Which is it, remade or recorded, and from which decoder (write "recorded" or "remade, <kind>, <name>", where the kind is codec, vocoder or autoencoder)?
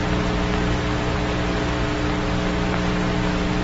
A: recorded